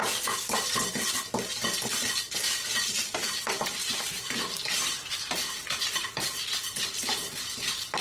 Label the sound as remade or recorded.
recorded